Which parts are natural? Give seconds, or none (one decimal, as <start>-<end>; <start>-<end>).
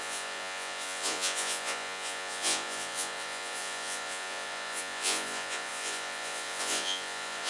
none